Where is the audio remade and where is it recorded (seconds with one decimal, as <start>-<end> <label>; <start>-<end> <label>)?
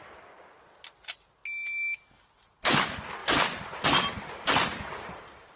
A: 0.0-5.6 recorded